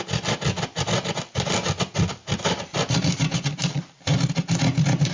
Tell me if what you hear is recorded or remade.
recorded